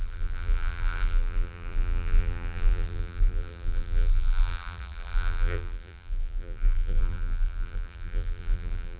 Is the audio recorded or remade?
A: remade